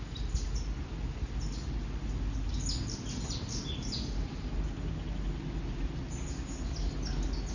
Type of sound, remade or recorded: recorded